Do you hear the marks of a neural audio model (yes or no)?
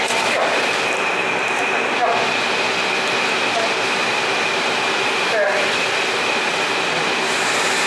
no